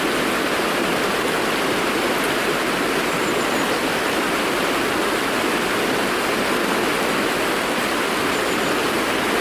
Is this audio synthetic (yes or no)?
no